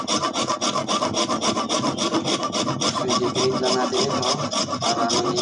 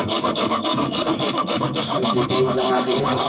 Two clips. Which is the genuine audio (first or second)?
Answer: first